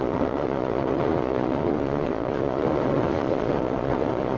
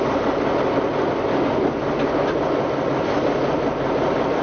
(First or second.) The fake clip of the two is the first